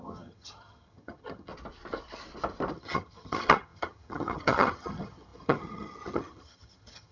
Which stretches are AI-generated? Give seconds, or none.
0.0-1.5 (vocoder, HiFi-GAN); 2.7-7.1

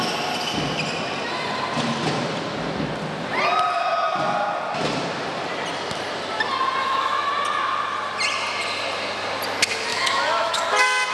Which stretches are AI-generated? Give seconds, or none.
6.8-7.3 (autoencoder, DAC-VAE); 9.9-10.6

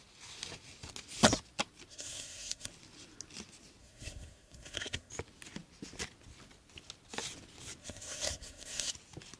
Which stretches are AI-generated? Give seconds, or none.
1.9-2.7 (codec, SNAC); 3.8-5.1; 7.8-8.9